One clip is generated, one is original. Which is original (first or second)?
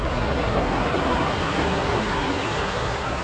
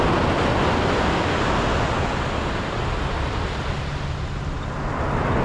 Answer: second